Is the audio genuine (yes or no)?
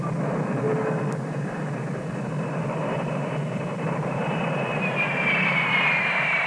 no